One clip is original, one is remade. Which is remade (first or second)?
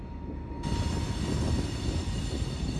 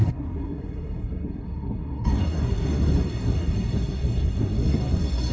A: second